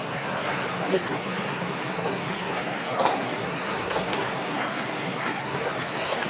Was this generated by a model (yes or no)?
yes